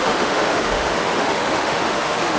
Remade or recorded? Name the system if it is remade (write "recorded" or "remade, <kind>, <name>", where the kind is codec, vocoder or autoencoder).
remade, autoencoder, DAC-VAE